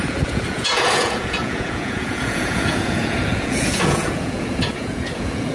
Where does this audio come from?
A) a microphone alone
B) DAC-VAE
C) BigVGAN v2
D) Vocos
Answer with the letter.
D